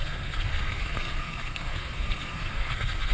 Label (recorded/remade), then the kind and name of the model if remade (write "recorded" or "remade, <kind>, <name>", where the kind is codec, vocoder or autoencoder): remade, codec, SNAC